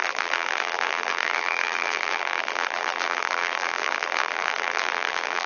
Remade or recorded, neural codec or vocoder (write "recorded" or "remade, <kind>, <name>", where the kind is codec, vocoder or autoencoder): remade, vocoder, BigVGAN v2